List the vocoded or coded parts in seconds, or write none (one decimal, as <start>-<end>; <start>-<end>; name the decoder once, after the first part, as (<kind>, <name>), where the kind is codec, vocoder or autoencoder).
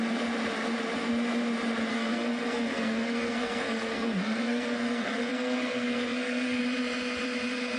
1.9-6.6 (codec, SNAC)